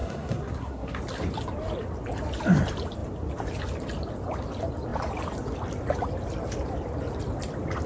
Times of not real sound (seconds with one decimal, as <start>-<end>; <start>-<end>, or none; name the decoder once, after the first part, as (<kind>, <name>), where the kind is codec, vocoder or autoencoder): 0.0-1.0 (codec, SNAC)